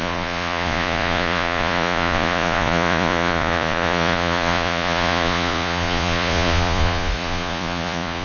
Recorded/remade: remade